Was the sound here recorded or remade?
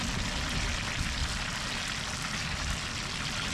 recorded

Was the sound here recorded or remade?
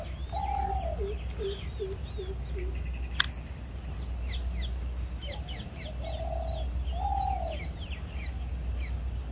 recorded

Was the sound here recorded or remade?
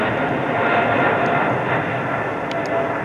recorded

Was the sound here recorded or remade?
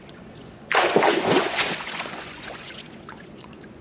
remade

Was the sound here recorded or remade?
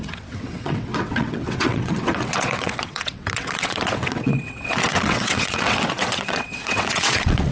remade